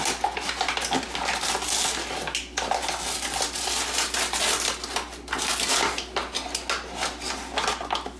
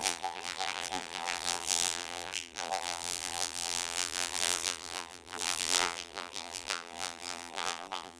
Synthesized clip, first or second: second